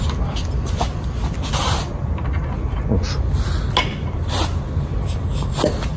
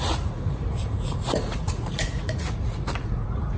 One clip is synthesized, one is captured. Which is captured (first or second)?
first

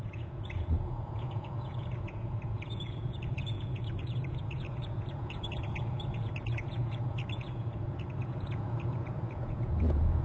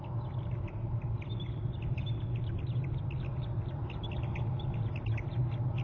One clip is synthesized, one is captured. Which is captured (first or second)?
second